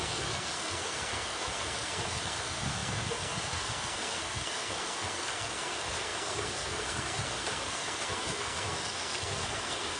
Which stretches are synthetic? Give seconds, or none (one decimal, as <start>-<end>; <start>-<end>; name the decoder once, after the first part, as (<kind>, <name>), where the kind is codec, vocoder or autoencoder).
0.0-10.0 (codec, SNAC)